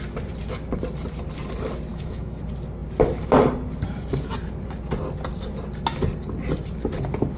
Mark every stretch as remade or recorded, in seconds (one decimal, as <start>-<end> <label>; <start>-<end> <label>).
0.0-1.9 recorded; 1.9-2.4 remade; 2.4-7.4 recorded

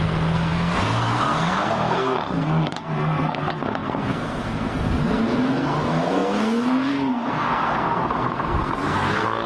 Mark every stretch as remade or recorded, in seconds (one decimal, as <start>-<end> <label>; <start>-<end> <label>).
0.0-9.5 remade

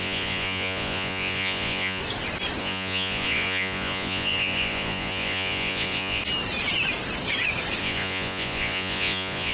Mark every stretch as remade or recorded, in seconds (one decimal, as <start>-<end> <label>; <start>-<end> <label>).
0.0-2.0 remade; 2.0-2.6 recorded; 2.6-6.2 remade; 6.2-7.8 recorded; 7.8-9.5 remade

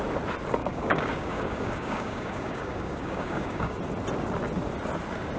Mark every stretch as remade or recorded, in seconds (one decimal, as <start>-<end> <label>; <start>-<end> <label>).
0.0-0.6 recorded; 0.6-3.8 remade; 3.8-5.4 recorded

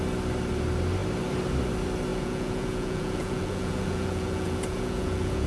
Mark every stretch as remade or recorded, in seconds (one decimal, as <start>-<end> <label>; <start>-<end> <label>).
0.0-2.1 recorded; 2.1-5.5 remade

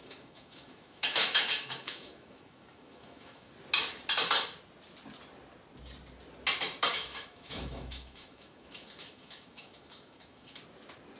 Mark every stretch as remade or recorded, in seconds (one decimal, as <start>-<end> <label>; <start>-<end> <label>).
0.0-3.5 remade; 3.5-6.9 recorded; 6.9-10.6 remade; 10.6-11.2 recorded

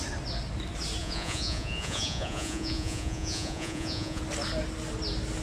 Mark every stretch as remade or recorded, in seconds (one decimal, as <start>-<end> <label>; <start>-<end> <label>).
0.0-1.0 recorded; 1.0-4.2 remade; 4.2-5.4 recorded